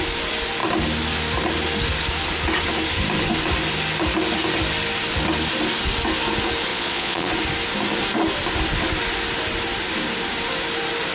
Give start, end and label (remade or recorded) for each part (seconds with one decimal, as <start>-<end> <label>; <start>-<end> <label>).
0.0-6.7 recorded; 6.7-7.3 remade; 7.3-11.1 recorded